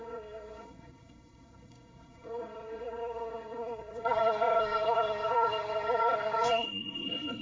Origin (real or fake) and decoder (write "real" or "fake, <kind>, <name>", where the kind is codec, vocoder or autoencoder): fake, codec, SNAC